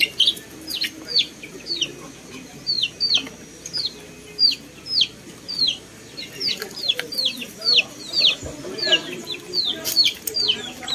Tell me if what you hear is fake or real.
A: real